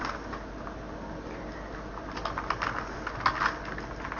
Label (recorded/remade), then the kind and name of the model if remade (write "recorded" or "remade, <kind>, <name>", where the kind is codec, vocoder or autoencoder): recorded